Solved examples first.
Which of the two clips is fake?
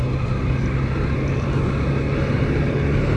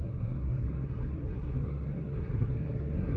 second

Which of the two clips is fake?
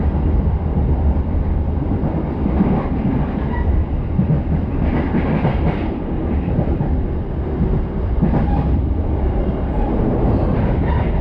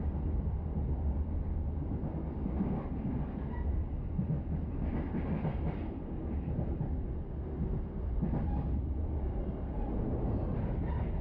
first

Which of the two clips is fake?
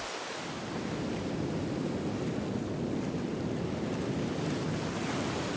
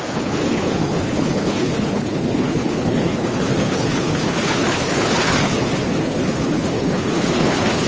second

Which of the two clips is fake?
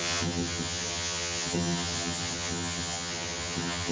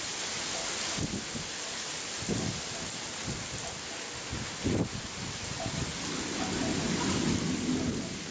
first